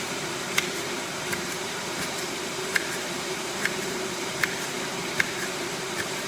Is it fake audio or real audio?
fake